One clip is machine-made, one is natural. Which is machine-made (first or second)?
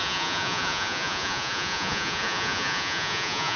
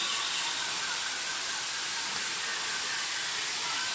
first